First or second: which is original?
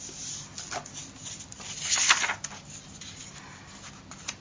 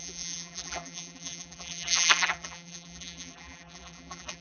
first